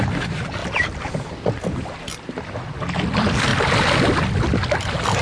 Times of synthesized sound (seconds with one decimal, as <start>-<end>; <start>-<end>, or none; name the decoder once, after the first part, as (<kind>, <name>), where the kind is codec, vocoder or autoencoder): none